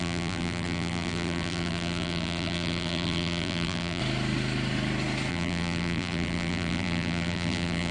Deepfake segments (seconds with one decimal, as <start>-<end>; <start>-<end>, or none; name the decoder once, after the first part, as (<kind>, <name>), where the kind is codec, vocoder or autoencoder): 0.0-4.0 (vocoder, BigVGAN v2); 5.3-7.9